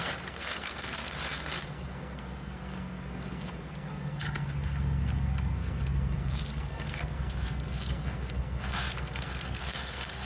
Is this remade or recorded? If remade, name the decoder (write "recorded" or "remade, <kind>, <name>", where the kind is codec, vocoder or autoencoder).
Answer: remade, codec, SNAC